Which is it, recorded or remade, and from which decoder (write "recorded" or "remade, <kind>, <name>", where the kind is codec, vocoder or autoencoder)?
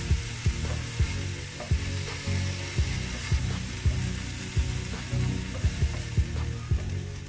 recorded